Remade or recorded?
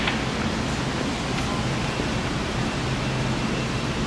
recorded